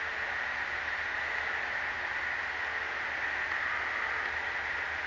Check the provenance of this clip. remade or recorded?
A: recorded